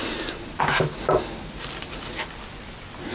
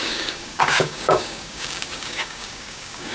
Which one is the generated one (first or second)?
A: second